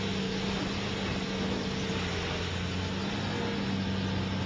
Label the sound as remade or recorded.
recorded